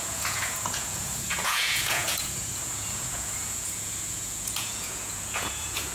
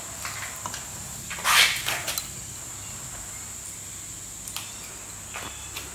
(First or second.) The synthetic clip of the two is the first